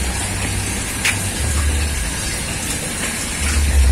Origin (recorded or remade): recorded